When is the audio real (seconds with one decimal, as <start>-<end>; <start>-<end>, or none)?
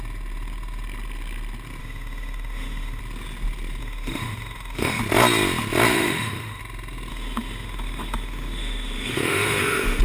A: 0.0-1.8; 3.0-3.8; 5.0-5.9; 6.6-7.1